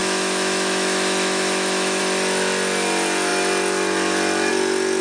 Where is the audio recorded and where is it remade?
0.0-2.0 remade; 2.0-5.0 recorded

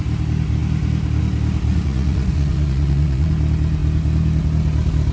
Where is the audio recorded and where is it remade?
0.0-1.7 recorded; 1.7-3.3 remade; 3.3-5.1 recorded

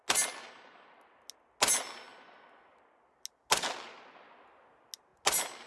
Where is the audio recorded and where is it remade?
0.0-5.7 recorded

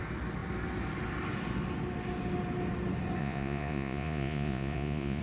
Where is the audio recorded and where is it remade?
0.0-3.2 recorded; 3.2-5.2 remade

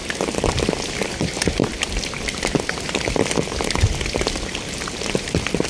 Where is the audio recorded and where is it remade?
0.0-5.7 recorded

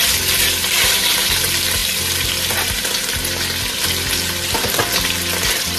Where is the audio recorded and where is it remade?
0.0-5.8 recorded